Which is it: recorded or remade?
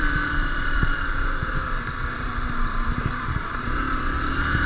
remade